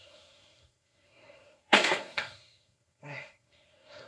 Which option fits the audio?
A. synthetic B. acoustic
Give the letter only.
A